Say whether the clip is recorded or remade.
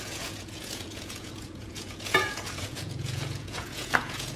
remade